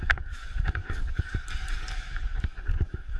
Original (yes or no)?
no